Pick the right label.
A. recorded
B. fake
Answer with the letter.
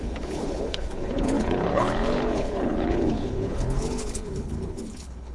B